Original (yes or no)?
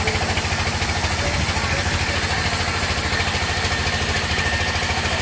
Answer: yes